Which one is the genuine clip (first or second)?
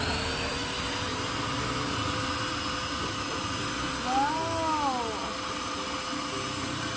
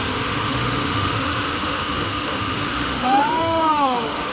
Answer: first